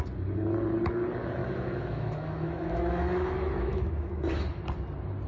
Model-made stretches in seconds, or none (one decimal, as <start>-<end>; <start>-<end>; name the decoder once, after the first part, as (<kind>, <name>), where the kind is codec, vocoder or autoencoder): 1.4-4.6 (autoencoder, DAC-VAE)